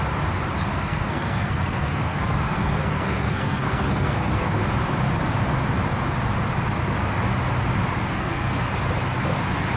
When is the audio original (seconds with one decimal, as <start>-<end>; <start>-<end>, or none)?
0.0-0.7; 4.6-8.1; 8.7-9.8